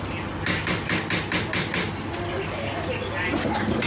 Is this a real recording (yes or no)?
yes